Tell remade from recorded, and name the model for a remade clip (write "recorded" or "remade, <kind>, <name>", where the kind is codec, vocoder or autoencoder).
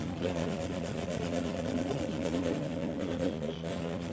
remade, vocoder, Vocos